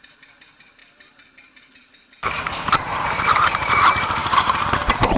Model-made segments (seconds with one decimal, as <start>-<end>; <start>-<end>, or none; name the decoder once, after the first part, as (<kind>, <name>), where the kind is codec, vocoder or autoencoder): 0.0-5.2 (vocoder, BigVGAN v2)